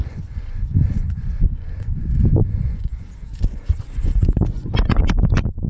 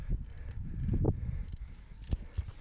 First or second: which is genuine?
second